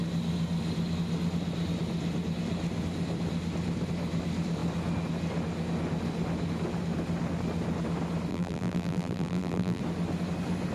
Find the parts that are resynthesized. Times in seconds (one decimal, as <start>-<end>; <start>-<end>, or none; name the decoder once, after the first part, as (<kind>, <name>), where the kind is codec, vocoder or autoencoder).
8.3-9.8 (vocoder, BigVGAN v2)